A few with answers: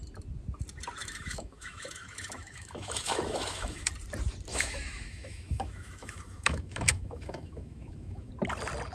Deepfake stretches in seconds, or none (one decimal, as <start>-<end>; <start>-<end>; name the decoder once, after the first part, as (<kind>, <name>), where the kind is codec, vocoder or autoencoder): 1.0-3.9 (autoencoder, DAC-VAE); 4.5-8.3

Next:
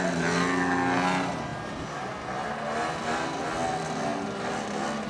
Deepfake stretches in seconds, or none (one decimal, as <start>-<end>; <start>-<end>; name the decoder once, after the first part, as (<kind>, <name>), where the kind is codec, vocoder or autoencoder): none

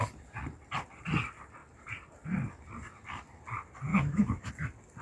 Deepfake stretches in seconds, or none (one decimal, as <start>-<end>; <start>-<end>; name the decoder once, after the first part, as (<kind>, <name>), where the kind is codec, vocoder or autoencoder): 3.9-4.5 (autoencoder, DAC-VAE)